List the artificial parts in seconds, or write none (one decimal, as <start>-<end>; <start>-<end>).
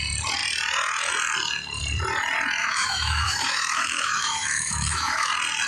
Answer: 2.6-5.3